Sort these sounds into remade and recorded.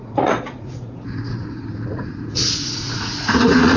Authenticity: remade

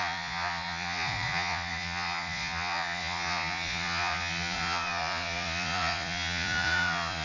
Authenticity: remade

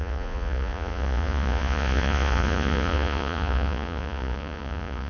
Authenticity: remade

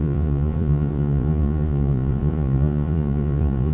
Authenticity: remade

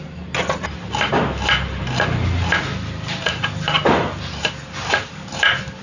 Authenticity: recorded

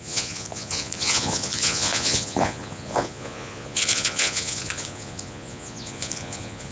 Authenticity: remade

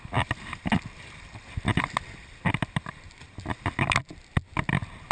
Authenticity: recorded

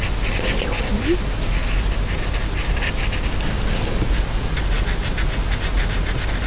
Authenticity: recorded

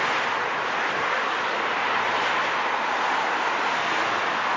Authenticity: recorded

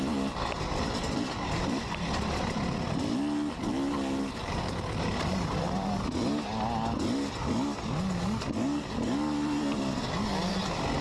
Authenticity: recorded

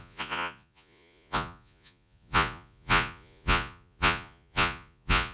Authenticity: remade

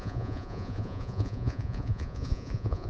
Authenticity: remade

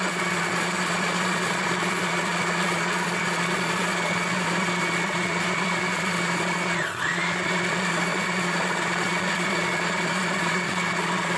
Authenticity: remade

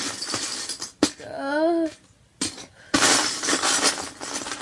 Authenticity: recorded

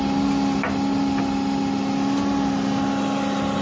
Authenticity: recorded